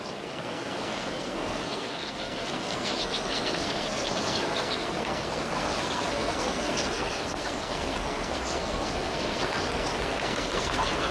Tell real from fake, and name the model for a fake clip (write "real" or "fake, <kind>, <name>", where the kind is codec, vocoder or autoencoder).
fake, codec, SNAC